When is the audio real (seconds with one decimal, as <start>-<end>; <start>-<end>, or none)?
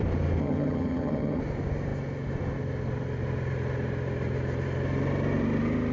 0.0-0.4; 1.4-5.9